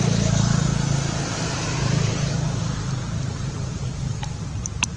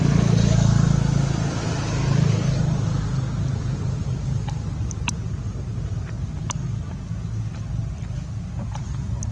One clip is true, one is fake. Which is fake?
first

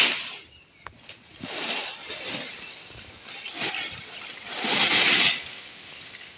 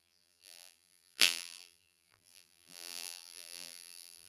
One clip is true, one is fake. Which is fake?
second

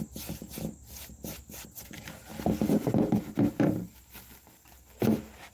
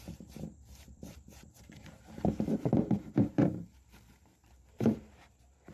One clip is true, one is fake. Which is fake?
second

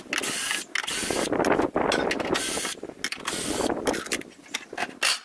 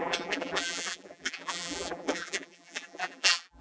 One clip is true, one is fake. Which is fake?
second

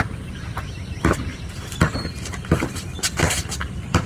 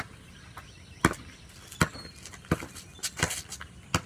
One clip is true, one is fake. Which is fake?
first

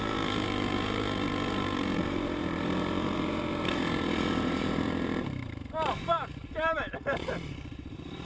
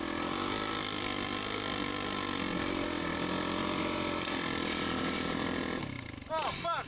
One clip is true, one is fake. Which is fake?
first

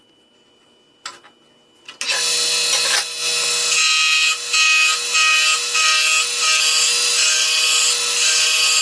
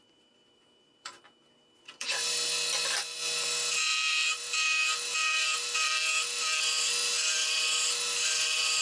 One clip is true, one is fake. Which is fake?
second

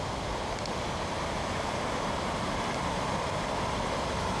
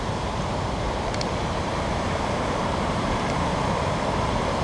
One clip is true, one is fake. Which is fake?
second